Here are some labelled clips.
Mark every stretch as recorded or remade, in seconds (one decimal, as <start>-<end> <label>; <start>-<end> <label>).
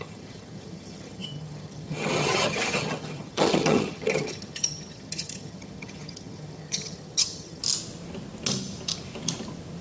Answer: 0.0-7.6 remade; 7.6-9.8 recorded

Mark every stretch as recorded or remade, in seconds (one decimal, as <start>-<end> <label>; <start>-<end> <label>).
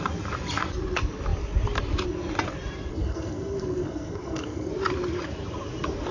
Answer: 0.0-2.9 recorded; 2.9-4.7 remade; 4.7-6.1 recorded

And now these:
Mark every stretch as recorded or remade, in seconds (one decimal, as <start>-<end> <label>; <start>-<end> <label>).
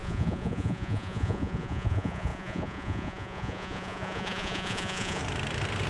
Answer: 0.0-5.2 remade; 5.2-5.9 recorded